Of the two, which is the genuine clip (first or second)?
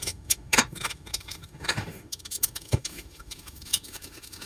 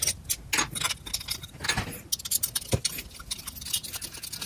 second